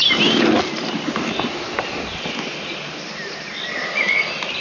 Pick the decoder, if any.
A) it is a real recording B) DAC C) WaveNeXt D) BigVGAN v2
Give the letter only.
A